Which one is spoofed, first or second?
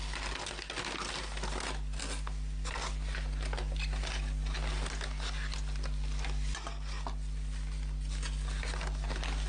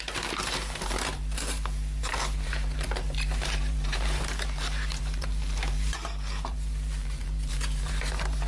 second